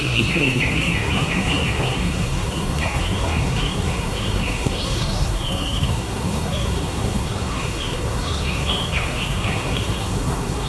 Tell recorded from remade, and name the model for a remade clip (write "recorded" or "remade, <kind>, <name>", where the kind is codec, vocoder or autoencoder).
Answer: remade, codec, SNAC